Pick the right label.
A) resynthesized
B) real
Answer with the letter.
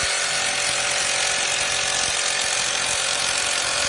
B